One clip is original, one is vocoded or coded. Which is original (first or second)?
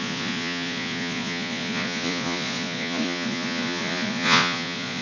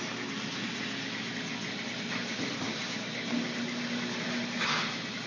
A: second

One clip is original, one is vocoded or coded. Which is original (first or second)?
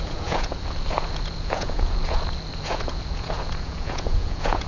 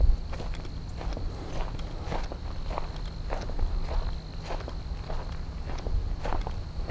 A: second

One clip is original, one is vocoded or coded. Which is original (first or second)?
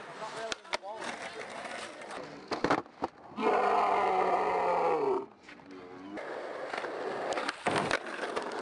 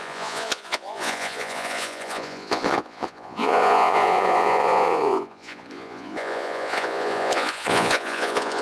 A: first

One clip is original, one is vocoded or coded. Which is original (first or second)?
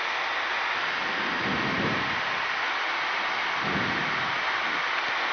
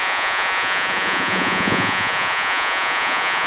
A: first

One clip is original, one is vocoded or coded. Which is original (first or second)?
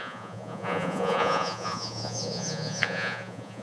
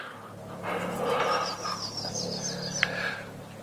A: second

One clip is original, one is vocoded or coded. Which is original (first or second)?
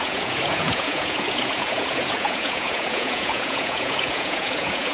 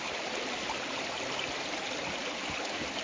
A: second